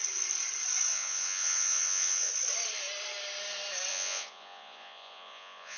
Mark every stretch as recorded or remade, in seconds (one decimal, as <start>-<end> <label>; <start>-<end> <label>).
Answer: 0.0-0.9 recorded; 0.9-2.3 remade; 2.3-3.9 recorded; 3.9-5.8 remade